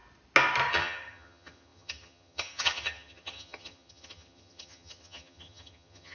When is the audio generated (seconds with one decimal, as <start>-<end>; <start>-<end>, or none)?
0.7-6.1